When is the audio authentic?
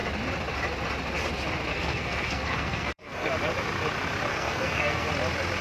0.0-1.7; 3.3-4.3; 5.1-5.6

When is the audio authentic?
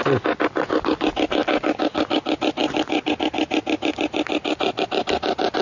0.0-5.6